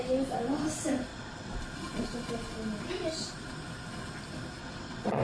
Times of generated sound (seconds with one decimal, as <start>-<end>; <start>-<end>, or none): 1.1-1.6; 4.6-5.2